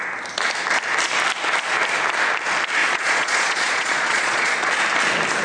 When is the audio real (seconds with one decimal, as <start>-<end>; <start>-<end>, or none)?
0.0-2.8; 4.7-5.4